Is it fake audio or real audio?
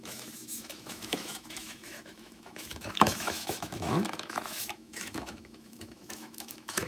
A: fake